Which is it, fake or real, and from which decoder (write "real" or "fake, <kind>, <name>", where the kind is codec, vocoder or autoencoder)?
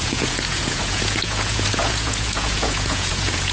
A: fake, vocoder, Vocos